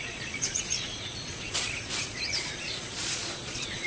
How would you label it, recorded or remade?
remade